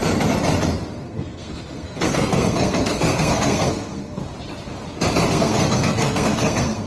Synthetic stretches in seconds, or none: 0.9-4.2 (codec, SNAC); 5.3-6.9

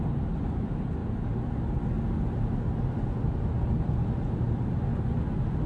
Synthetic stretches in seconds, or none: none

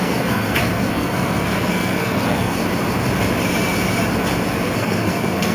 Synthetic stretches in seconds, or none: 0.0-2.6 (codec, SNAC); 4.5-5.5

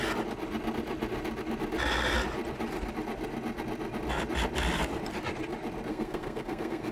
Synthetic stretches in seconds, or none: 5.9-6.9 (codec, SNAC)

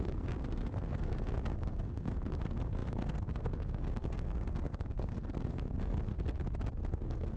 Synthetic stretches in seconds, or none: 0.0-6.1 (codec, SNAC); 6.9-7.4